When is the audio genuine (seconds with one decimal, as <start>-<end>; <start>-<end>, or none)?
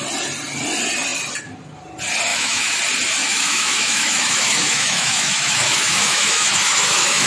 0.0-2.3; 2.8-3.2